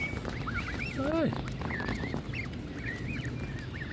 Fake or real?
real